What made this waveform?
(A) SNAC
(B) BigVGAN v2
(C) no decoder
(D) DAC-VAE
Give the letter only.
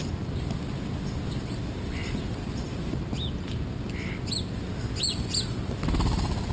C